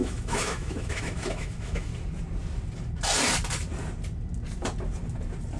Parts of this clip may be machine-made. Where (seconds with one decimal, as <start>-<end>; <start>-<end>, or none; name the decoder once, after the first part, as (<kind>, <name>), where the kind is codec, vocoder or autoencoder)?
0.0-1.9 (autoencoder, DAC-VAE)